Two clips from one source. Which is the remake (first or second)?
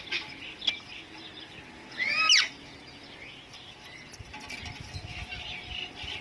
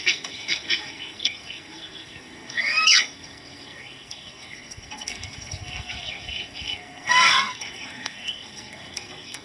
second